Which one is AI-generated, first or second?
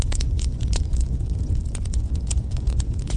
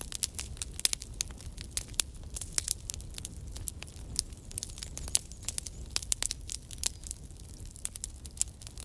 first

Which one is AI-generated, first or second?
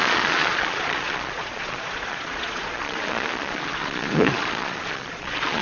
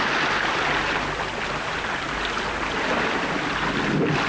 first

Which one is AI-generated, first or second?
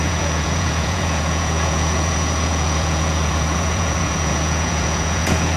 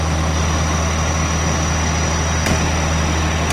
first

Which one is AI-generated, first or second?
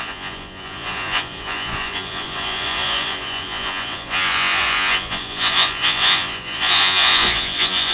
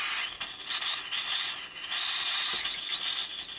first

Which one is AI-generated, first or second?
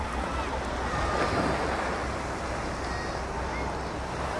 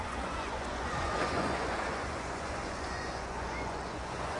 second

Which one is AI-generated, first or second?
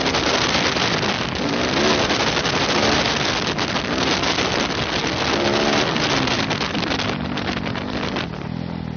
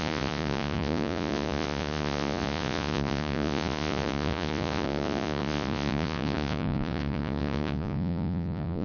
second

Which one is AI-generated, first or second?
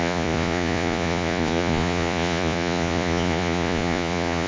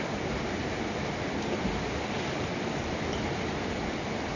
first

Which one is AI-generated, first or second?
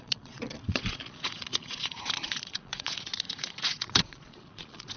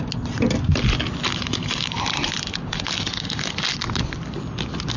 first